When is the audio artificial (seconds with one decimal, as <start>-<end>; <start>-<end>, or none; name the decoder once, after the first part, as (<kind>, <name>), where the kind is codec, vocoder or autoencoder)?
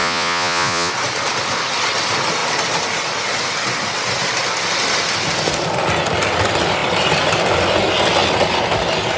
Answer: 0.0-0.9 (vocoder, Vocos)